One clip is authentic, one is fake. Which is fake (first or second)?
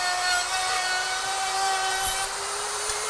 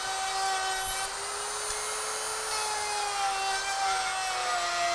first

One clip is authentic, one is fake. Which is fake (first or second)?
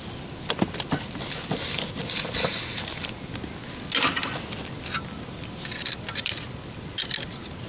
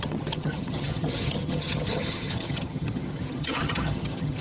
second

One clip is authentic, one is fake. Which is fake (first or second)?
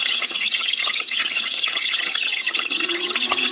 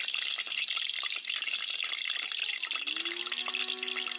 first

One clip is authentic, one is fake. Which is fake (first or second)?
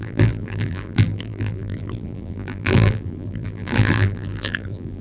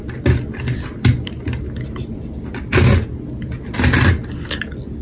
first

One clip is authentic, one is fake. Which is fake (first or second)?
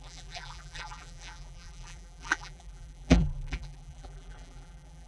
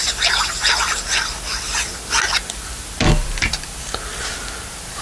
first